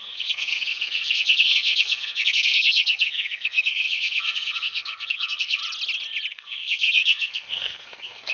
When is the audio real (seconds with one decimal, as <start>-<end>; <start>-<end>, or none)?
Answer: 5.6-6.3